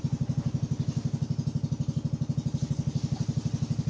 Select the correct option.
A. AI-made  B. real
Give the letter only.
B